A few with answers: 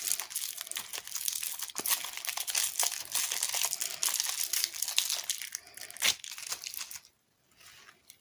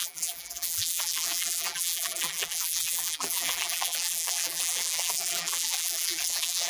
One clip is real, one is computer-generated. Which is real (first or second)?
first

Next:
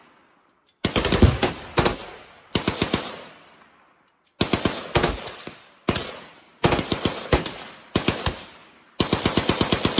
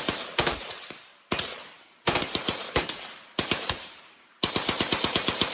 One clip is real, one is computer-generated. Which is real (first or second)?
first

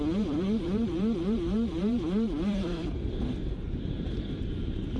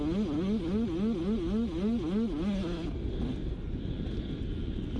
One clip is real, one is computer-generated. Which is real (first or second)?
second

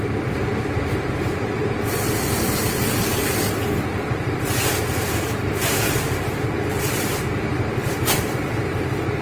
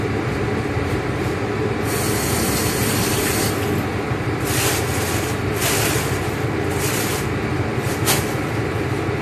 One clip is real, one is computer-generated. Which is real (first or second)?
second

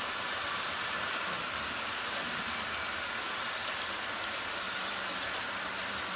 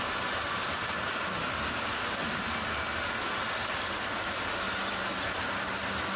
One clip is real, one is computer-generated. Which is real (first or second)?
second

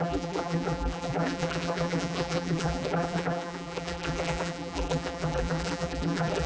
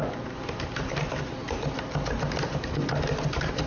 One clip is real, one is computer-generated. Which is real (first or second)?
second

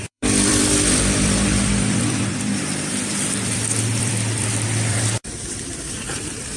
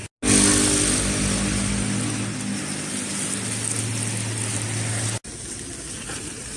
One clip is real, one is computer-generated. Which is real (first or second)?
second